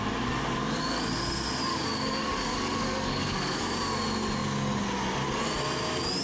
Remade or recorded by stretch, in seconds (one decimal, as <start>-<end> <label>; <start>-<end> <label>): 0.0-1.7 recorded; 1.7-3.6 remade; 3.6-6.2 recorded